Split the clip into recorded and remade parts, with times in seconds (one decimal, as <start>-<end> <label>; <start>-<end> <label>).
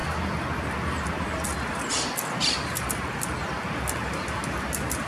0.0-5.1 recorded